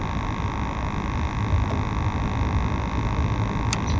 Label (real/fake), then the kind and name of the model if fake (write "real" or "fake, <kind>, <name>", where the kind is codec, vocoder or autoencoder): real